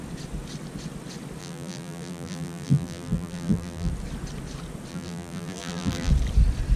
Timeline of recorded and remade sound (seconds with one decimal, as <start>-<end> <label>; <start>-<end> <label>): 0.0-1.4 recorded; 1.4-3.9 remade; 3.9-4.9 recorded; 4.9-6.1 remade; 6.1-6.8 recorded